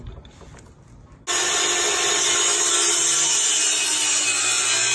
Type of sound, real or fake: real